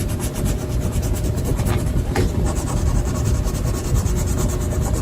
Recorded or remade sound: remade